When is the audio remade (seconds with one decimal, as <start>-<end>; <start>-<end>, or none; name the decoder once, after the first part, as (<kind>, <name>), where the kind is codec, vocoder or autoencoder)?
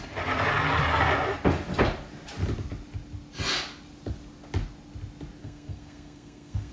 5.4-6.7 (codec, SNAC)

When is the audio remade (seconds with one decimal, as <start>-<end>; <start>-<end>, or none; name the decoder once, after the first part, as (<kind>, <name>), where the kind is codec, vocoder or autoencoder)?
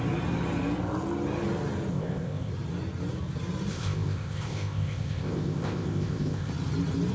1.9-2.5 (codec, ZipCodec); 3.7-6.5